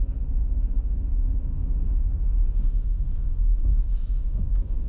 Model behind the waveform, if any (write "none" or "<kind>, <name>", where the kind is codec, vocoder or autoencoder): autoencoder, DAC-VAE